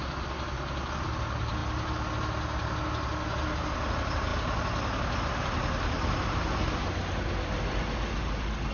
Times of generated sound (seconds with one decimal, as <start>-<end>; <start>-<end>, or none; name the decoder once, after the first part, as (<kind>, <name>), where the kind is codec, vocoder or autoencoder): none